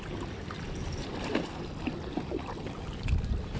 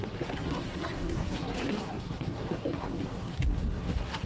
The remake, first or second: second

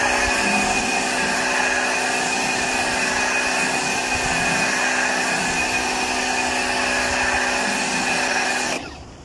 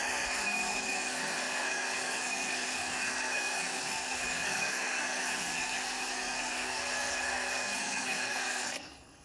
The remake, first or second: second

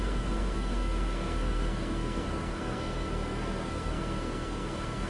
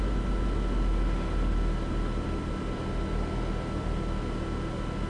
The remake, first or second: first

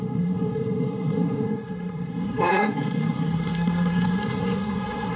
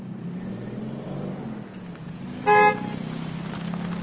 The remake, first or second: first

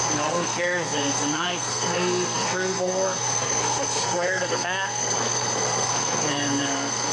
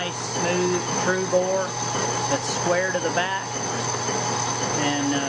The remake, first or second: first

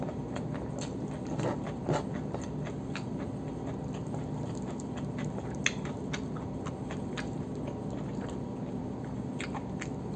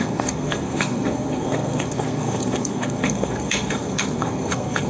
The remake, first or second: second